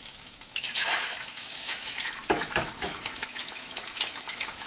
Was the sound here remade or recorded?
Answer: remade